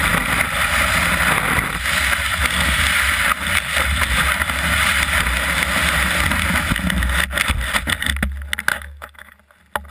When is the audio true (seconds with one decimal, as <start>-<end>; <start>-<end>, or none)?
0.0-8.7; 9.4-9.9